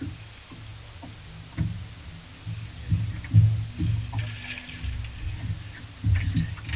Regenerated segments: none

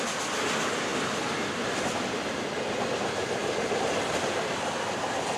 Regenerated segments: 3.4-4.6 (vocoder, BigVGAN v2)

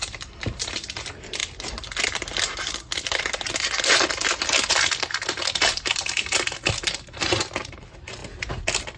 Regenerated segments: 0.0-1.4 (vocoder, BigVGAN v2); 4.7-8.2

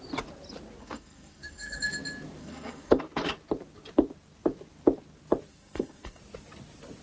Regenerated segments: 0.8-1.9 (codec, SNAC); 2.4-3.0; 5.5-6.2